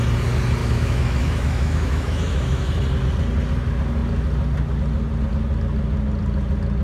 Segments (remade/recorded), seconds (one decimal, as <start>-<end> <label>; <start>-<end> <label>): 0.0-0.6 recorded; 0.6-2.7 remade; 2.7-6.8 recorded